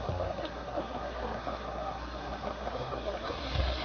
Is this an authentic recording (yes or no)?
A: no